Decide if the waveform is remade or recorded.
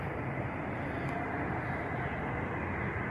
recorded